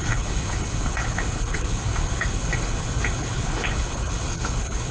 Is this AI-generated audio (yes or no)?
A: yes